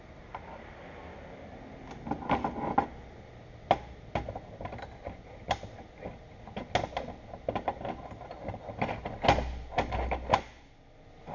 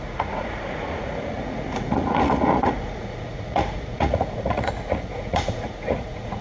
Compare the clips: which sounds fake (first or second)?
second